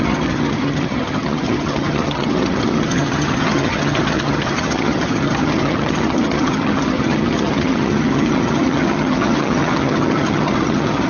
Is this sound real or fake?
fake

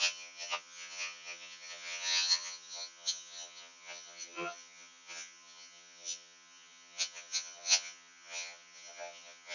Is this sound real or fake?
fake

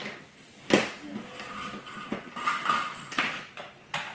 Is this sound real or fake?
real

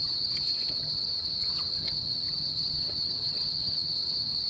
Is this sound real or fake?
fake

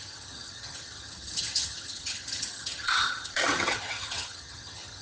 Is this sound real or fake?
fake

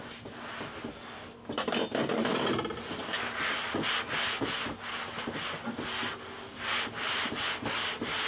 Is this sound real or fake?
real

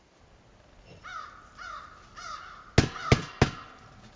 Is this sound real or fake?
real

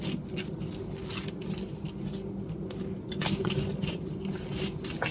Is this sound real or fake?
real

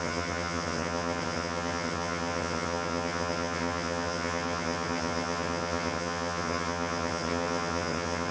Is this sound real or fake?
fake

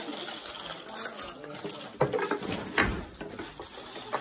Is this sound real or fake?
real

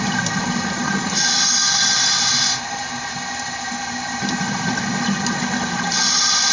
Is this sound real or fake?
real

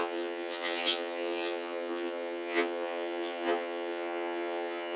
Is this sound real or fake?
fake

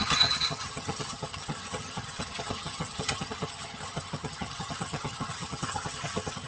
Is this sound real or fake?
fake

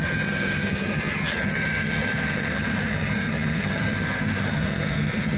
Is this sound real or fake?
fake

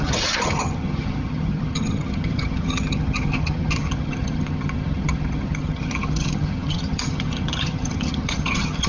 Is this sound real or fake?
fake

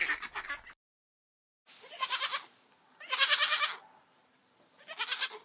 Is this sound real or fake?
real